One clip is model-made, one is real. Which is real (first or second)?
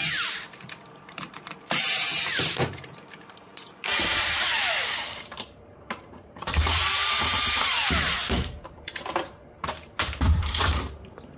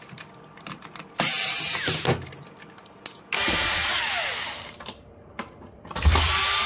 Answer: second